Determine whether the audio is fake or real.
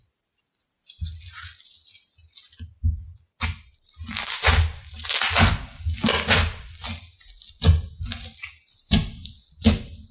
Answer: real